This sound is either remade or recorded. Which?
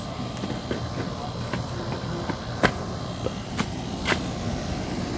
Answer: remade